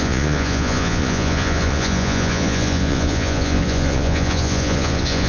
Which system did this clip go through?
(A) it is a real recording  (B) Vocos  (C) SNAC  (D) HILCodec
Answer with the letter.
B